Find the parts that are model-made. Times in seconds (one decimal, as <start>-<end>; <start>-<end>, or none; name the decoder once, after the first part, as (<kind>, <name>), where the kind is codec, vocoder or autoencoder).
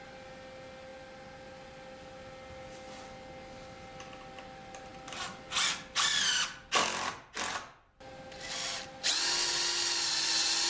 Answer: none